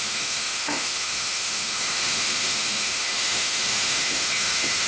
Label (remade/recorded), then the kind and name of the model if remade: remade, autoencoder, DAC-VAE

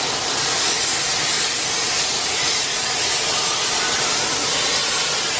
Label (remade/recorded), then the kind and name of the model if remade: recorded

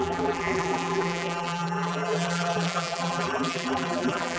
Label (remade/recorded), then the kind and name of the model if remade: remade, vocoder, BigVGAN v2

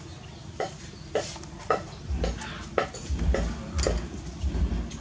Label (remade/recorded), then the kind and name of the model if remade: recorded